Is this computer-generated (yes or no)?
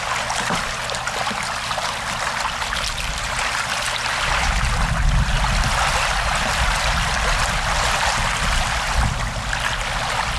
no